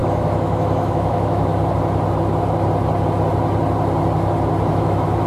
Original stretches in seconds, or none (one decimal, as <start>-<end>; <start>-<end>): 1.5-4.7